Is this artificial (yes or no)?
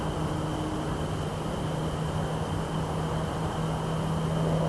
no